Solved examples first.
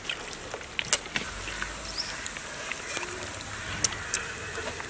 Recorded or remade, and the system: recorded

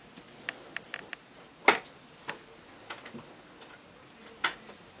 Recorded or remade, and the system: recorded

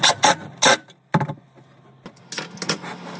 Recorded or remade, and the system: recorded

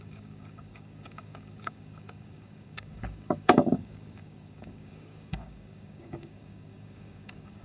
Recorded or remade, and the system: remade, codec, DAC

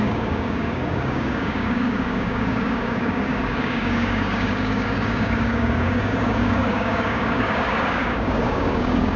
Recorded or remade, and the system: remade, codec, DAC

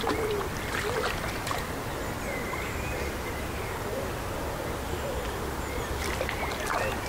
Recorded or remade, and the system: recorded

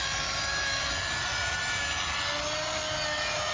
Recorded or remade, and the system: recorded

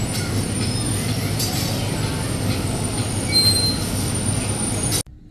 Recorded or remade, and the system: recorded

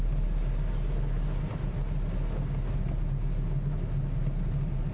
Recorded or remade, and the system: recorded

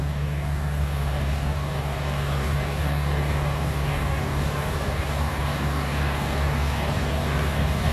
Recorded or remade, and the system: remade, codec, DAC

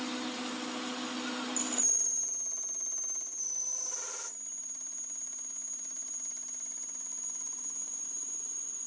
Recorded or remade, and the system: recorded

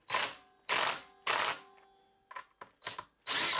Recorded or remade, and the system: recorded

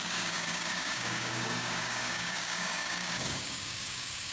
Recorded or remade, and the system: remade, codec, DAC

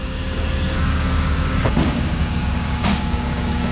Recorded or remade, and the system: remade, codec, DAC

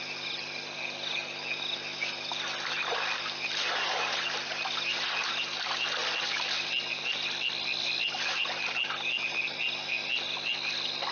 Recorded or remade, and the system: recorded